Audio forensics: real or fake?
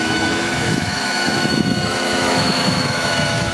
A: fake